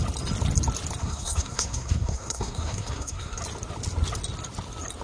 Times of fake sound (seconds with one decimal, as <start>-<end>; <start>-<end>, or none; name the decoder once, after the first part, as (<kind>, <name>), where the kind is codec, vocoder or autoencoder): 1.0-3.4 (codec, SNAC)